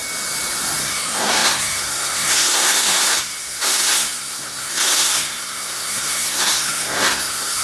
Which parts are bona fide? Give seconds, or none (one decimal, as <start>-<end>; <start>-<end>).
0.0-0.8